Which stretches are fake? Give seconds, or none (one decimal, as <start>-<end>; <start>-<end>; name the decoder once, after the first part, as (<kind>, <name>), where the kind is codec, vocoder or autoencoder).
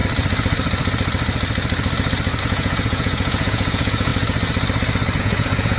2.4-4.1 (vocoder, Vocos); 5.2-5.8